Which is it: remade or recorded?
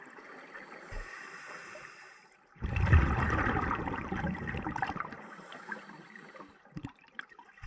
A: remade